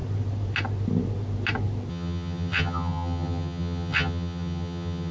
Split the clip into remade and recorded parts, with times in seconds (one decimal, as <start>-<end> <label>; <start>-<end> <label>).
0.0-1.9 recorded; 1.9-5.1 remade